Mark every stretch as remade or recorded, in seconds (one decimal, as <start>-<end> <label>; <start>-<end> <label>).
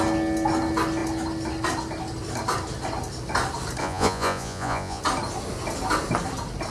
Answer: 0.0-3.8 recorded; 3.8-5.0 remade; 5.0-6.7 recorded